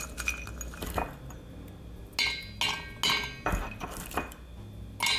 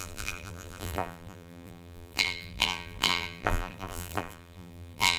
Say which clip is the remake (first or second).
second